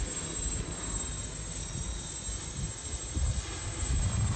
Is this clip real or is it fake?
real